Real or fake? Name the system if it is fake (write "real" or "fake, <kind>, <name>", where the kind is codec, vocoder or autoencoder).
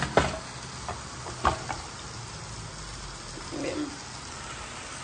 real